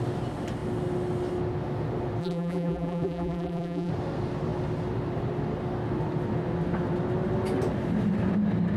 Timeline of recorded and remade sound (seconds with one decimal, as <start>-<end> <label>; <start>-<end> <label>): 0.0-2.2 recorded; 2.2-3.9 remade; 3.9-8.8 recorded